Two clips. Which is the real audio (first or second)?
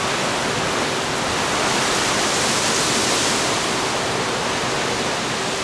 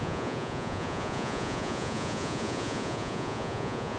first